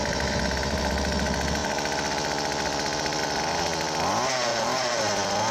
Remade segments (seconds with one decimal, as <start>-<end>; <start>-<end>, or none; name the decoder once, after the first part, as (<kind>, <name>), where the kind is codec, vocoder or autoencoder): 0.0-0.9 (vocoder, BigVGAN v2); 4.5-5.0